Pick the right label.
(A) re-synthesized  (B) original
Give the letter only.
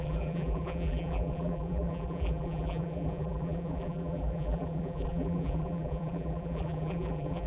A